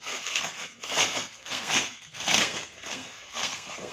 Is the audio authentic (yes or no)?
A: no